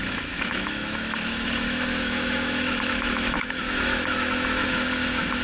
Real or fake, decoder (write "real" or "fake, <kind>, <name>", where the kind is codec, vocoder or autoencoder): fake, autoencoder, DAC-VAE